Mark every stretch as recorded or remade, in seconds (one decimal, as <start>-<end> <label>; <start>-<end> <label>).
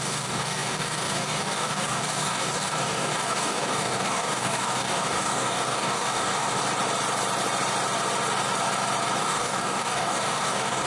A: 0.0-6.6 remade; 6.6-9.2 recorded; 9.2-10.9 remade